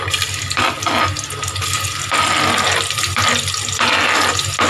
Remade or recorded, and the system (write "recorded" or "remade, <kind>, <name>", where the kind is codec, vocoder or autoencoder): recorded